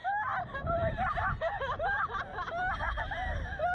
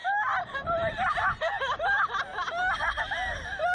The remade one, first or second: first